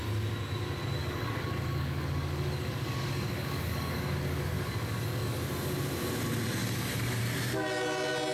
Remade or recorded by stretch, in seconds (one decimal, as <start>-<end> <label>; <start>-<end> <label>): 0.0-1.0 recorded; 1.0-5.4 remade; 5.4-6.6 recorded; 6.6-7.2 remade; 7.2-8.3 recorded

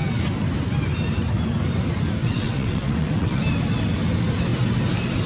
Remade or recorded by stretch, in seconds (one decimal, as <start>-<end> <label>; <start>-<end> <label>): 0.0-2.2 recorded; 2.2-3.4 remade; 3.4-5.3 recorded

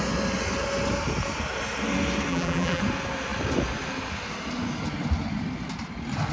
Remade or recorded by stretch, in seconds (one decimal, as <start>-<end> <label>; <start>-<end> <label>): 0.0-2.3 recorded; 2.3-2.8 remade; 2.8-6.3 recorded

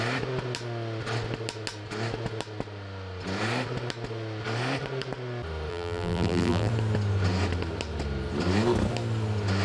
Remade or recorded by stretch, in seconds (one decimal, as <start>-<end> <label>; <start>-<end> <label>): 0.0-5.7 recorded; 5.7-6.7 remade; 6.7-9.6 recorded

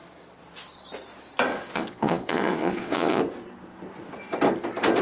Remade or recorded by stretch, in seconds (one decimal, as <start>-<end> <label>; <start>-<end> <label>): 0.0-1.5 recorded; 1.5-3.2 remade; 3.2-5.0 recorded

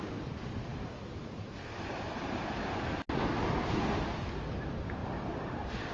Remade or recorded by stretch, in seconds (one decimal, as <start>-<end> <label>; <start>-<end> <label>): 0.0-5.0 recorded; 5.0-5.9 remade

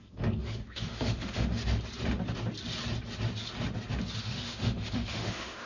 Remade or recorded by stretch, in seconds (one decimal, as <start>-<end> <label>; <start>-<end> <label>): 0.0-1.6 remade; 1.6-4.2 recorded; 4.2-5.7 remade

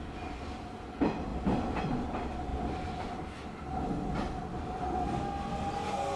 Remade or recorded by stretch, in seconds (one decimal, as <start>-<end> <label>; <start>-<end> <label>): 0.0-6.2 recorded